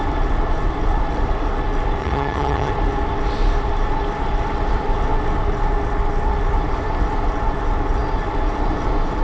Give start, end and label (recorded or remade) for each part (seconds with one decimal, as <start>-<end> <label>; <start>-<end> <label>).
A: 0.0-2.0 recorded; 2.0-2.7 remade; 2.7-9.2 recorded